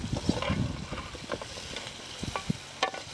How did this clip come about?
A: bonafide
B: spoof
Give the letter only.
A